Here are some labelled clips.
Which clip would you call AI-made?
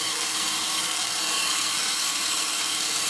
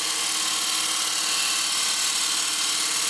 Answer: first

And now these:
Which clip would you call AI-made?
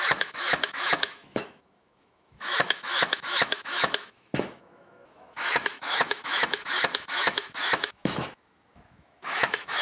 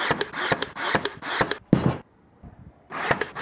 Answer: first